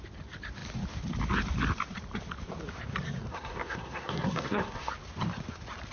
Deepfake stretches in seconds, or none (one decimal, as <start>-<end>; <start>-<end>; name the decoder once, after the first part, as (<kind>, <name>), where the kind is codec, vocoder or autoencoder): 3.3-4.9 (codec, SNAC)